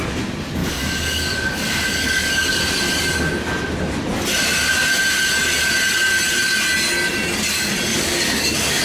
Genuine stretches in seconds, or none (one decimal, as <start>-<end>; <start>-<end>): 0.0-0.6; 2.6-7.9